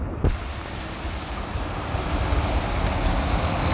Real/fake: real